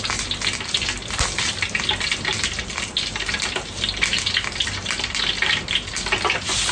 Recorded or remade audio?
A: recorded